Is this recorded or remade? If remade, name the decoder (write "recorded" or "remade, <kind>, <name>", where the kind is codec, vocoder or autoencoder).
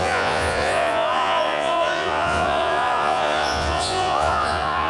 remade, vocoder, Vocos